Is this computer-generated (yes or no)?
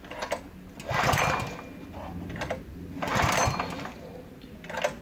no